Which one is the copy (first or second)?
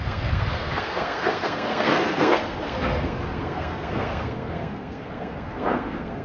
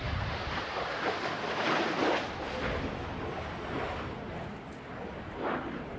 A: first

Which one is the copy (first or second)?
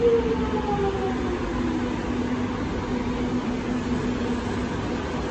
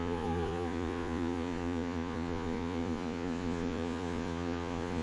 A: second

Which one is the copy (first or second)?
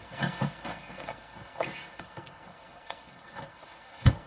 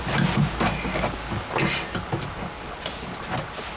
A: first